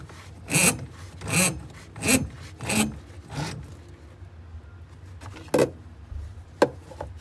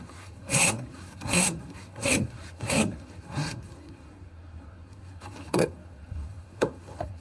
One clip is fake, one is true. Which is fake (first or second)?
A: second